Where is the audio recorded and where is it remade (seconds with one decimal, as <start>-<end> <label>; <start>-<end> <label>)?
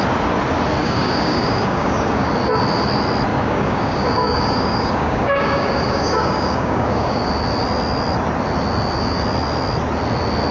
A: 0.0-0.8 recorded; 0.8-2.3 remade; 2.3-3.3 recorded; 3.3-7.3 remade; 7.3-10.5 recorded